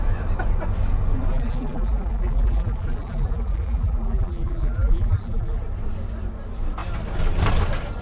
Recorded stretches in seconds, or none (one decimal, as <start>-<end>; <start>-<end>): 0.0-1.3; 5.6-8.0